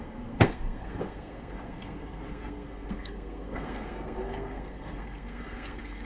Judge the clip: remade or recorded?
remade